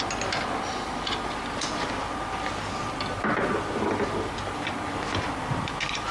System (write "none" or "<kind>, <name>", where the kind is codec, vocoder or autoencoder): none